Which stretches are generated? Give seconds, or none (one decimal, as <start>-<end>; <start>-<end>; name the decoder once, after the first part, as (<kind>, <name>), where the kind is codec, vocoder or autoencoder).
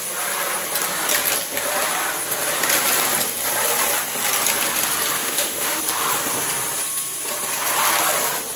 5.2-5.8 (autoencoder, DAC-VAE)